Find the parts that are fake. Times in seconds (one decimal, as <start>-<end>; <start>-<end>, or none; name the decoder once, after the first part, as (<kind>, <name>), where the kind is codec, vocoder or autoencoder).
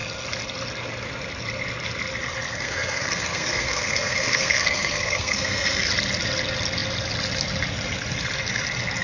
2.5-5.9 (codec, SNAC)